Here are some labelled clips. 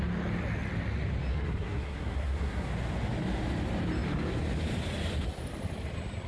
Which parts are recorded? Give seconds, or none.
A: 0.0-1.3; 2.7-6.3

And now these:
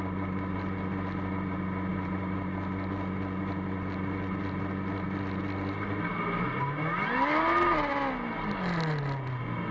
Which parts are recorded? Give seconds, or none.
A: 0.0-9.7

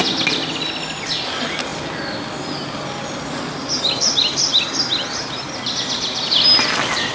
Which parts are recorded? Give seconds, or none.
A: 0.0-7.1

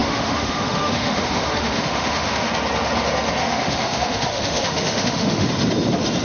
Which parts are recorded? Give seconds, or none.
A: 2.5-3.4; 5.5-6.2

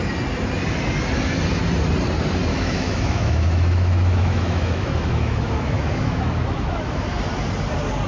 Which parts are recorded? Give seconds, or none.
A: 0.0-2.5; 7.1-8.1

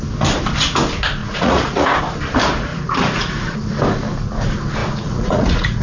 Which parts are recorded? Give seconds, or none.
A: 0.0-1.2; 2.0-2.7; 3.6-4.8

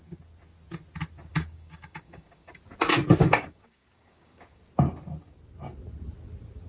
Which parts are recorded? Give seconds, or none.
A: 0.0-1.3; 2.6-3.2; 4.6-6.7